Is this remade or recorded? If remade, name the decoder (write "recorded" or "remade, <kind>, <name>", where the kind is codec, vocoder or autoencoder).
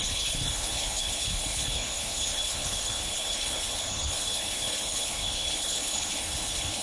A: remade, codec, HILCodec